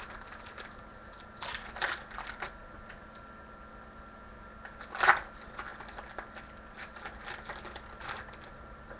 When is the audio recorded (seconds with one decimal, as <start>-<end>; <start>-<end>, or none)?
0.0-9.0

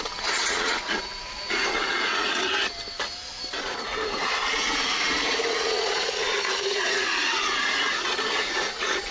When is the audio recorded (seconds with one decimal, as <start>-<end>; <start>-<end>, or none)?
2.4-3.6

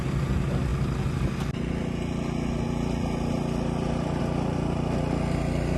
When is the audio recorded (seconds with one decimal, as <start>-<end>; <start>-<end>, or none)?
0.0-5.8

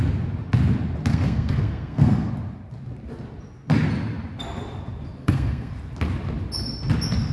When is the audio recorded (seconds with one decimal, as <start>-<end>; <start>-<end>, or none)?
0.0-1.1; 2.3-5.2; 5.7-7.3

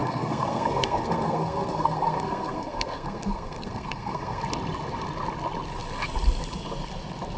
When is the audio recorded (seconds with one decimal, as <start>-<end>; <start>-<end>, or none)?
4.4-7.4